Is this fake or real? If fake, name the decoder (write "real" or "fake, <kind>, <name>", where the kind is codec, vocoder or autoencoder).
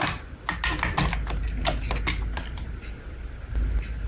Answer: real